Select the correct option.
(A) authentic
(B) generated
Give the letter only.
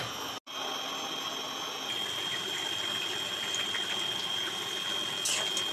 A